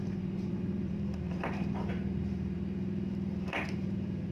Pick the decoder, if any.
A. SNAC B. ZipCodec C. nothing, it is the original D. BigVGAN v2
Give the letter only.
D